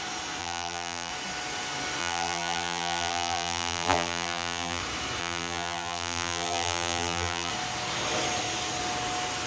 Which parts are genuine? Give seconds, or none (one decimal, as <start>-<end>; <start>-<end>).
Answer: 0.0-0.4; 1.1-2.0; 4.8-5.2; 7.5-9.5